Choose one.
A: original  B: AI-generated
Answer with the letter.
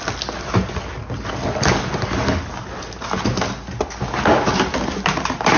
A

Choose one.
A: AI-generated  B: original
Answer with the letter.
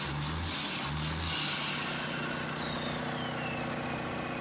B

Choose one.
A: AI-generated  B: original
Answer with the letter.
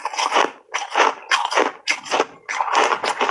B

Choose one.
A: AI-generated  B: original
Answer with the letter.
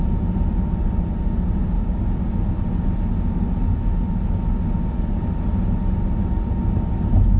B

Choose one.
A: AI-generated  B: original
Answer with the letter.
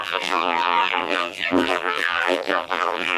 A